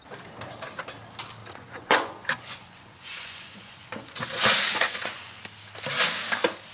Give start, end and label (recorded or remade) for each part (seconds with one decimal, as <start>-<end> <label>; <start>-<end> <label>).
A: 0.0-1.4 recorded; 1.4-5.4 remade; 5.4-6.7 recorded